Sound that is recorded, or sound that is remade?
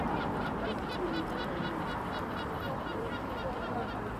recorded